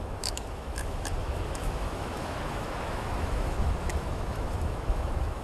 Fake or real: fake